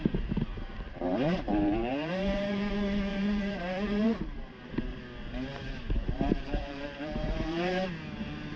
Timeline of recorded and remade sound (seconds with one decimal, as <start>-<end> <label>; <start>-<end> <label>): 0.0-0.5 recorded; 0.5-2.7 remade; 2.7-3.1 recorded; 3.1-4.5 remade; 4.5-5.5 recorded; 5.5-7.9 remade; 7.9-8.6 recorded